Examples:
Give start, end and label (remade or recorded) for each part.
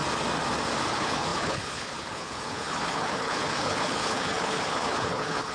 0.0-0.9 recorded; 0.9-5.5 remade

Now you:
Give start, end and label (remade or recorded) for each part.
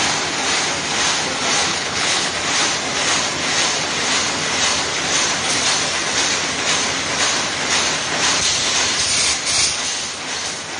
0.0-1.7 recorded; 1.7-2.3 remade; 2.3-10.8 recorded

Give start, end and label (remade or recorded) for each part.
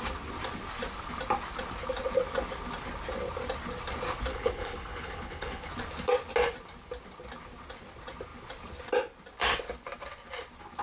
0.0-4.3 recorded; 4.3-5.7 remade; 5.7-10.8 recorded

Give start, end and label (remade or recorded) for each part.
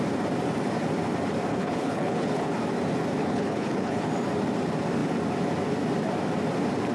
0.0-1.5 recorded; 1.5-2.5 remade; 2.5-3.2 recorded; 3.2-4.1 remade; 4.1-6.9 recorded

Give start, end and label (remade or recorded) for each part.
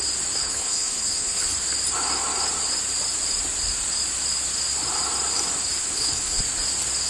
0.0-0.4 recorded; 0.4-1.5 remade; 1.5-5.8 recorded; 5.8-6.4 remade; 6.4-7.1 recorded